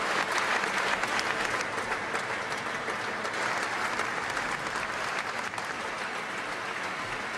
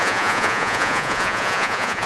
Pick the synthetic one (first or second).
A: second